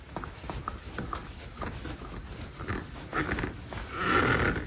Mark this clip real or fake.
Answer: real